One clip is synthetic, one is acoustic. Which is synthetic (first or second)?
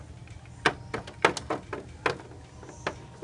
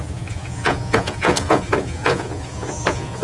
second